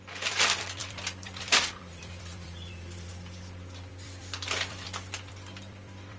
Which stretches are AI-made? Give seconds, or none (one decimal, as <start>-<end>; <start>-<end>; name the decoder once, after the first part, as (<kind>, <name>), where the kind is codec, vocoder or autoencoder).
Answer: 0.0-3.1 (vocoder, BigVGAN v2); 3.9-6.2